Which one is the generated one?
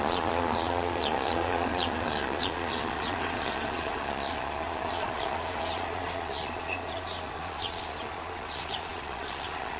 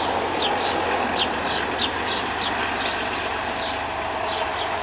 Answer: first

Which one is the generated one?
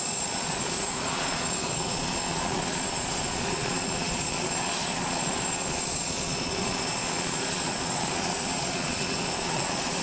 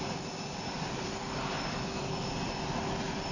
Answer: first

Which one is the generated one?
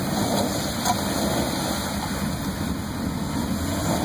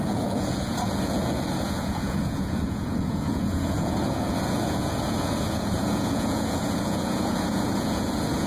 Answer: second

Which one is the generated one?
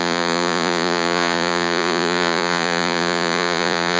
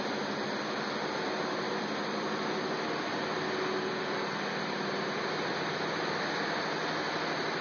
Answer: first